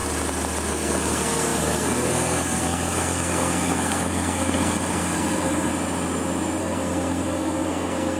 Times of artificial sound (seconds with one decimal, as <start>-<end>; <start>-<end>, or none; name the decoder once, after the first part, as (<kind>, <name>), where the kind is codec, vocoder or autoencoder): 0.7-5.7 (codec, SNAC); 6.6-8.2